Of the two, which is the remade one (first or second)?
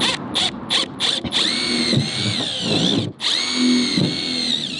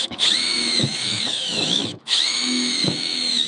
second